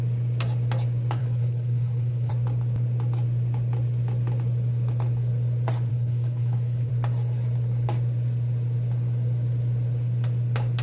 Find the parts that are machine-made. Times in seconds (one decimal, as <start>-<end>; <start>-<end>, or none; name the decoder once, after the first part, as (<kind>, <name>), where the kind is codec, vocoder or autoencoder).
1.2-2.3 (codec, HILCodec); 5.9-6.9

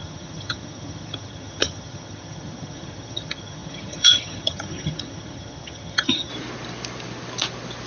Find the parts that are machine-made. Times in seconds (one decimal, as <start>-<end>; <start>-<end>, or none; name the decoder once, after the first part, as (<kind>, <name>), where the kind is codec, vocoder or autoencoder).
0.0-6.3 (vocoder, HiFi-GAN)

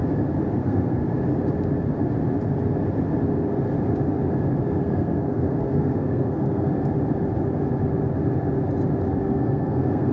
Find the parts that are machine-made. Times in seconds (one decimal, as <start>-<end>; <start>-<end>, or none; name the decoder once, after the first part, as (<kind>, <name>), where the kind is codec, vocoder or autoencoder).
0.6-1.0 (codec, SNAC); 4.8-6.7; 9.2-10.1

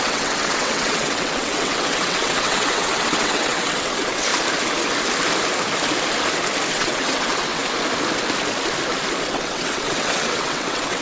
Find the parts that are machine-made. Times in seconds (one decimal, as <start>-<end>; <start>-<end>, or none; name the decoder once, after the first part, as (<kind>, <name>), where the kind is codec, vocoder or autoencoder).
0.0-4.3 (vocoder, WaveNeXt); 6.7-7.6; 9.3-11.0